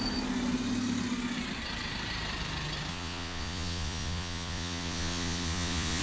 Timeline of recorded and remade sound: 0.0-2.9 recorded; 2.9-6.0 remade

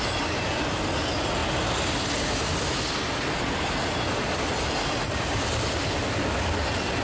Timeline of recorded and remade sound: 0.0-7.0 recorded

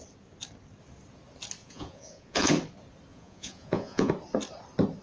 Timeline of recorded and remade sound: 0.0-1.6 recorded; 1.6-2.5 remade; 2.5-3.1 recorded; 3.1-4.1 remade; 4.1-5.0 recorded

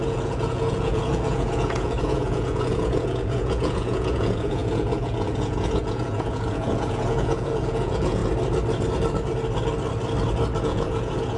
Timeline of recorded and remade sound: 0.0-8.2 remade; 8.2-10.6 recorded; 10.6-11.4 remade